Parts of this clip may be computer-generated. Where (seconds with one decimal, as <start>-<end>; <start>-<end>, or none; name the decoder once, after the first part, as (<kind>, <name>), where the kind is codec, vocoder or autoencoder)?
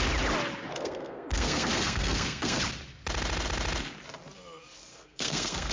0.7-2.6 (codec, SNAC); 4.9-5.7